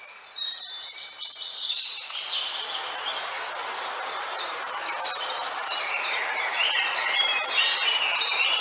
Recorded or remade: remade